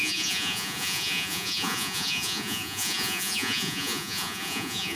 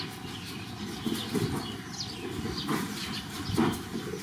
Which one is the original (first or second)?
second